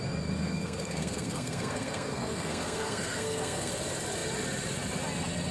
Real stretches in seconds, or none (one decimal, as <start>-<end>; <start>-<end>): 0.0-0.4; 3.7-5.5